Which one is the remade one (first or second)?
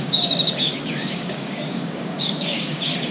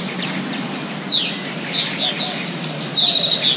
first